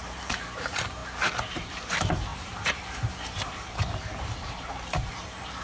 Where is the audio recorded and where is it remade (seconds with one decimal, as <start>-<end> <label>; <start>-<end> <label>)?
0.0-5.6 remade

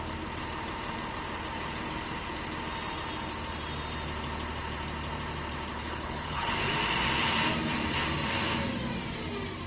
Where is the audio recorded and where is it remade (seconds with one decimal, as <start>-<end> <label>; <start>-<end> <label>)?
0.0-5.7 recorded; 5.7-6.5 remade; 6.5-9.7 recorded

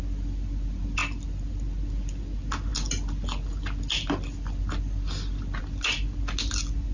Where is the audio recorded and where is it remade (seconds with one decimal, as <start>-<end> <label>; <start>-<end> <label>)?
0.0-6.9 recorded

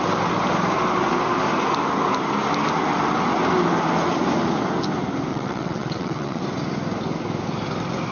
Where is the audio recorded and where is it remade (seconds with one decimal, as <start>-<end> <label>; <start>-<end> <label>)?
0.0-5.3 recorded; 5.3-6.4 remade; 6.4-8.1 recorded

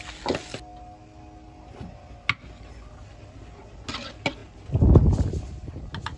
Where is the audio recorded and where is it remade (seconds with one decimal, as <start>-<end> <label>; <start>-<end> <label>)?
0.0-6.2 recorded

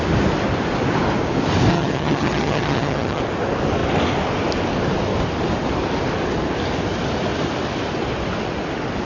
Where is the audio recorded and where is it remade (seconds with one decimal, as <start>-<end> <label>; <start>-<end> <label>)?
0.0-1.7 recorded; 1.7-3.2 remade; 3.2-9.1 recorded